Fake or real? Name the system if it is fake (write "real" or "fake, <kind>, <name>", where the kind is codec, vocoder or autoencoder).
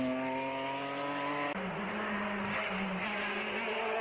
real